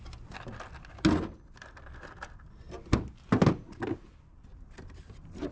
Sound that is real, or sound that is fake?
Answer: real